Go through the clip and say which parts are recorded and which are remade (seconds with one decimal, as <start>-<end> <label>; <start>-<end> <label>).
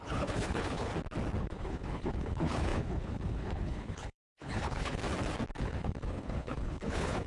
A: 0.0-0.9 remade; 0.9-1.4 recorded; 1.4-5.0 remade; 5.0-5.6 recorded; 5.6-7.3 remade